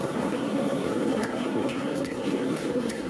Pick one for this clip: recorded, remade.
remade